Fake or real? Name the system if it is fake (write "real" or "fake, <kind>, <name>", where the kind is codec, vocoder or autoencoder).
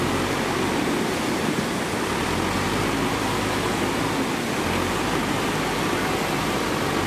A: real